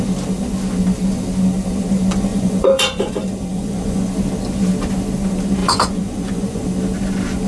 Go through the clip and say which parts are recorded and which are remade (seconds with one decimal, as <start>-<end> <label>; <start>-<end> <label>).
0.0-2.3 recorded; 2.3-3.1 remade; 3.1-3.5 recorded; 3.5-4.1 remade; 4.1-5.6 recorded; 5.6-6.6 remade; 6.6-7.5 recorded